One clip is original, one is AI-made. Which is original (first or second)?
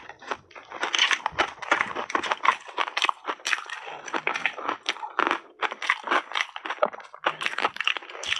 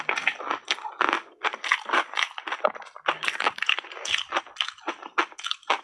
second